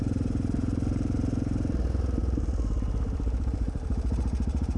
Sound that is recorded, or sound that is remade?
remade